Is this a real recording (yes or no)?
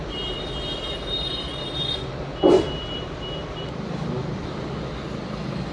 yes